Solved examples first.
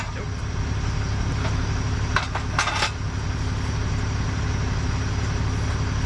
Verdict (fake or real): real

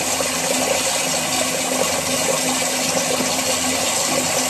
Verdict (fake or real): real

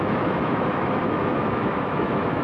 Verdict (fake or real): fake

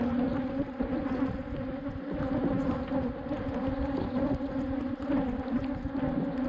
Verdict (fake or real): real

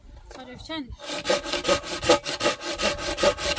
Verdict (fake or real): real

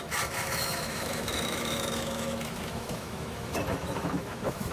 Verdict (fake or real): fake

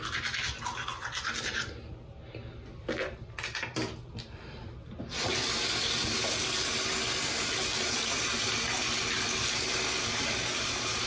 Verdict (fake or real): real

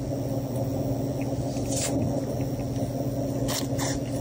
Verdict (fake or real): real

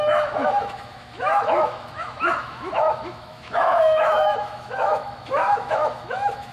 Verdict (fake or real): fake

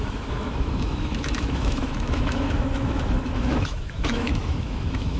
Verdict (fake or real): fake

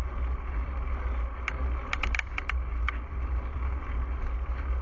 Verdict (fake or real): real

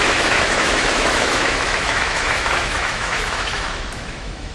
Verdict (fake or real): fake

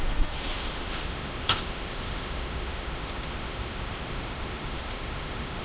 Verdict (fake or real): fake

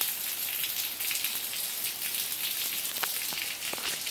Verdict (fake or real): real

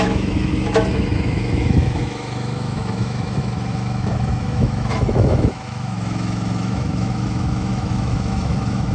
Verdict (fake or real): fake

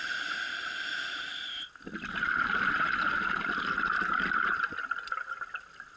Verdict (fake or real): real